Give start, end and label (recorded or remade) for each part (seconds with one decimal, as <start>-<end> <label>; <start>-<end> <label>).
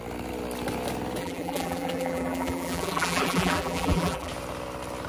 0.0-1.2 recorded; 1.2-4.3 remade; 4.3-5.1 recorded